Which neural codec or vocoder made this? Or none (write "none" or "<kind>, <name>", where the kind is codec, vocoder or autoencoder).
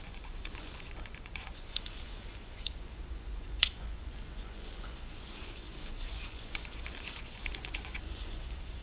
vocoder, Vocos